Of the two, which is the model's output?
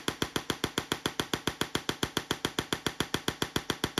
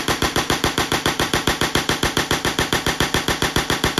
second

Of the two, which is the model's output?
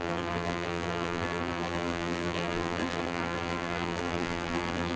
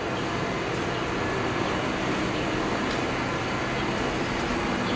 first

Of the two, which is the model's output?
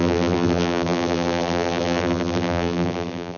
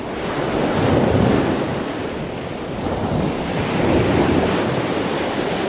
first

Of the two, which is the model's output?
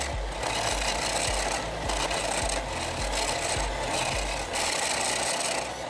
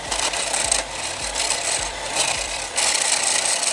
second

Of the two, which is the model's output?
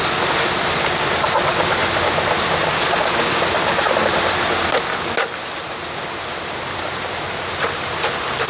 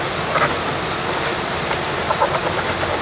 second